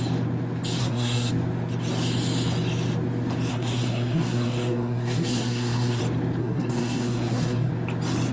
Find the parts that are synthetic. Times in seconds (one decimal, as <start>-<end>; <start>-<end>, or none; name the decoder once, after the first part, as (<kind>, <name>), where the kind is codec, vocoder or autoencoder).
0.8-1.3 (codec, SNAC); 3.5-6.0; 6.4-7.7